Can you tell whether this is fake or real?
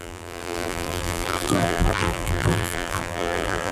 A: fake